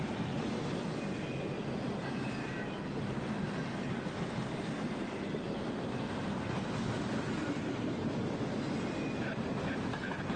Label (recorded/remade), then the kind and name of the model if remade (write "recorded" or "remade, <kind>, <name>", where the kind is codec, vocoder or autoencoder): recorded